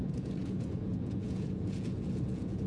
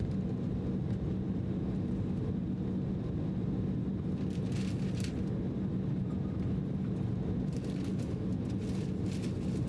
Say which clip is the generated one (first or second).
first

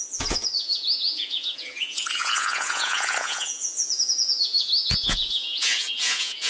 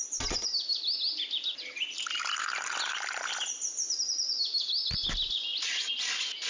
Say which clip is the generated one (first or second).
first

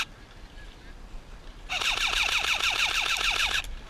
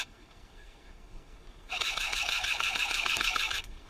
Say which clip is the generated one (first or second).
second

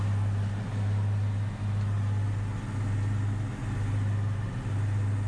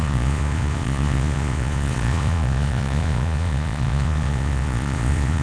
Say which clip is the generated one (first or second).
second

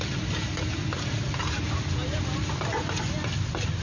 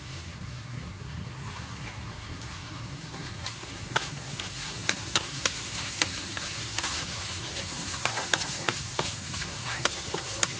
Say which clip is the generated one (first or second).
second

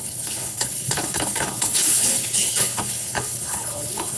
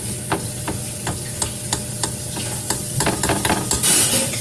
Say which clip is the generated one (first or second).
first